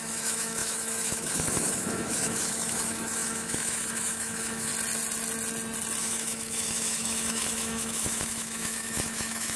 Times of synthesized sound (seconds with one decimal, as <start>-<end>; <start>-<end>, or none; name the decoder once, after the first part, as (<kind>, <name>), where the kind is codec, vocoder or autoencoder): 0.0-4.7 (autoencoder, DAC-VAE); 6.0-9.6

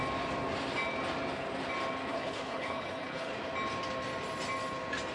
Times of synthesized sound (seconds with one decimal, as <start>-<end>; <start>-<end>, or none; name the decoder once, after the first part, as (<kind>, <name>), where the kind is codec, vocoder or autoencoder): 2.1-3.3 (codec, HILCodec)

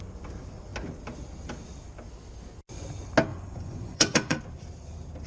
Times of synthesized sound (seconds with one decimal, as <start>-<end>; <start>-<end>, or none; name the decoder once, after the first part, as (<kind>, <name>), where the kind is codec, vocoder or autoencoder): 3.3-4.4 (vocoder, Vocos)

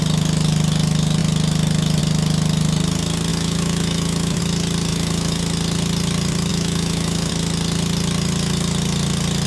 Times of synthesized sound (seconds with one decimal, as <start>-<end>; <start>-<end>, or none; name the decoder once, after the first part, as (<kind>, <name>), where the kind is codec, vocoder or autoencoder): 3.3-4.4 (autoencoder, DAC-VAE); 4.9-5.4; 6.5-7.3